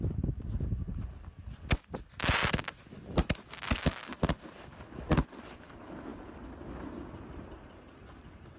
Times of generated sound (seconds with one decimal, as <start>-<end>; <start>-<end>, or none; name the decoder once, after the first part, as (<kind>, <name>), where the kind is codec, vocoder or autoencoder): none